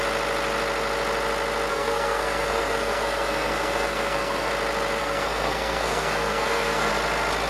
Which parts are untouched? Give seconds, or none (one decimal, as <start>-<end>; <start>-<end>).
0.0-1.7; 4.5-5.0; 6.9-7.5